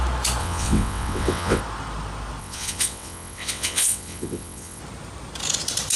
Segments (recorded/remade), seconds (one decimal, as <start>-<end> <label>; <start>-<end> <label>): 0.0-0.4 recorded; 0.4-1.6 remade; 1.6-2.4 recorded; 2.4-4.8 remade; 4.8-6.0 recorded